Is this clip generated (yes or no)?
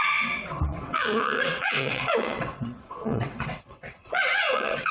yes